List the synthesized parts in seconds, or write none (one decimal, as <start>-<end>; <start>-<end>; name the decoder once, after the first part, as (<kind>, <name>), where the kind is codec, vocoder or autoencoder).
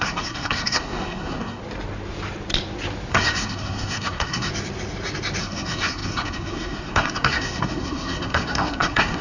0.0-1.6 (codec, SNAC); 3.1-4.5; 5.4-9.2